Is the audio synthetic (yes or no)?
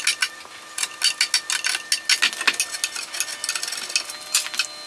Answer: no